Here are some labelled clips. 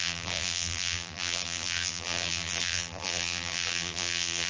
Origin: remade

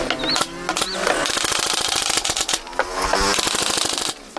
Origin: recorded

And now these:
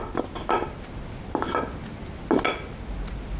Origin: recorded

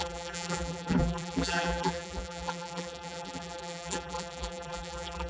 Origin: remade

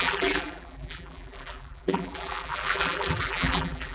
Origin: remade